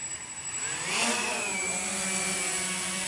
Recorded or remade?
recorded